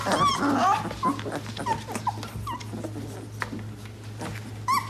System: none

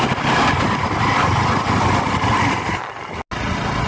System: none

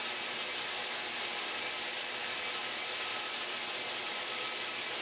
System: none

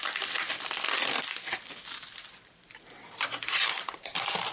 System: none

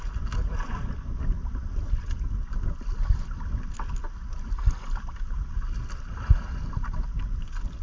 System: none